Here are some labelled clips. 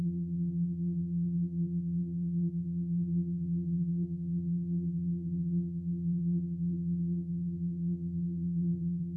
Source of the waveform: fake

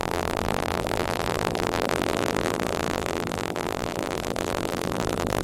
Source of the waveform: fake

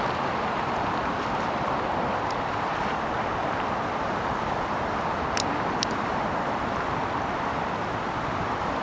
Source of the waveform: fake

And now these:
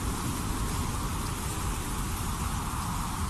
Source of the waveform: real